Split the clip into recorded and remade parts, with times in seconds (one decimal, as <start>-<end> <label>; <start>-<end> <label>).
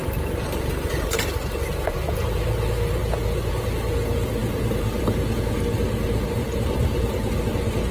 0.0-1.2 remade; 1.2-3.0 recorded; 3.0-3.5 remade; 3.5-4.4 recorded; 4.4-5.4 remade; 5.4-6.4 recorded; 6.4-7.5 remade; 7.5-7.9 recorded